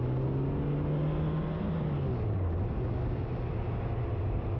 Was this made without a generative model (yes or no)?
yes